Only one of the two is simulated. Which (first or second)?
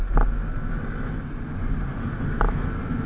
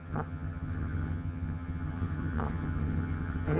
second